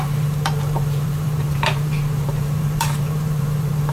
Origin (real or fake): fake